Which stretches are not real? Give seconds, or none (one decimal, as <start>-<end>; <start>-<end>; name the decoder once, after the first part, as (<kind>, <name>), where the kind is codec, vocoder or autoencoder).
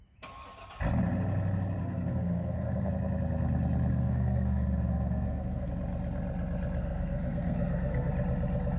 1.8-2.9 (codec, SNAC); 3.9-5.7; 6.8-8.1